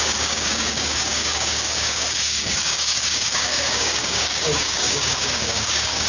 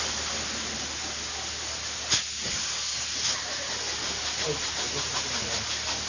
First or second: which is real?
second